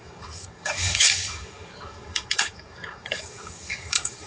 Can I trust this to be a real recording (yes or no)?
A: no